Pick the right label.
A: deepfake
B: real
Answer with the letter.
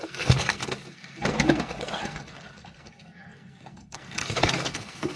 A